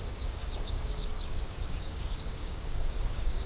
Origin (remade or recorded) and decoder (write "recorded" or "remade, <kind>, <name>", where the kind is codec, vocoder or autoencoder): remade, codec, DAC